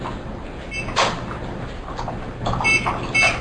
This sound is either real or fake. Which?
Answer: real